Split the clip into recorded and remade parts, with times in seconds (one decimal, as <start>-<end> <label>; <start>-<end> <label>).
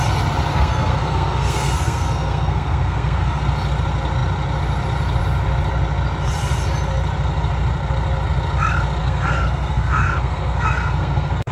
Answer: 0.0-0.5 recorded; 0.5-3.4 remade; 3.4-9.0 recorded; 9.0-11.5 remade